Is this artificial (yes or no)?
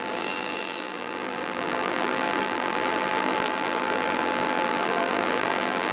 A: yes